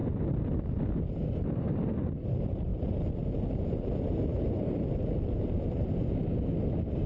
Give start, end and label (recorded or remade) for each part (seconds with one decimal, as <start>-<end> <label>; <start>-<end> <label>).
0.0-2.7 recorded; 2.7-6.3 remade; 6.3-7.1 recorded